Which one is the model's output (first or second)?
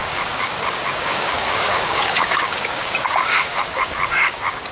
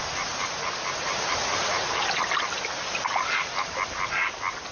first